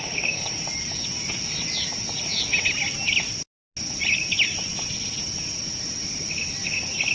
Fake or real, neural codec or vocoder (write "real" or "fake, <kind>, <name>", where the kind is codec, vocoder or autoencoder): real